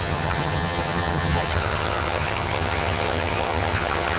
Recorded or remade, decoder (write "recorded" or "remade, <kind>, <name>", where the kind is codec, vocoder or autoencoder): remade, vocoder, HiFi-GAN